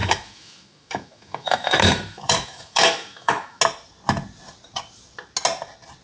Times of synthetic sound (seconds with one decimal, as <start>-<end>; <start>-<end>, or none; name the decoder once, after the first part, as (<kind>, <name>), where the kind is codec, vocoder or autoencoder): 0.0-3.6 (autoencoder, DAC-VAE)